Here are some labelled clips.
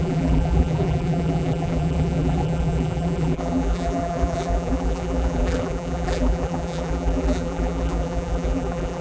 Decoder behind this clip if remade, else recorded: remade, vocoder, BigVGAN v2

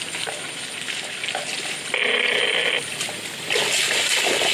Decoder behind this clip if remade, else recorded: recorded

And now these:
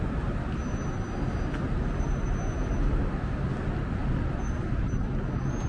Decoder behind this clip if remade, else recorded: recorded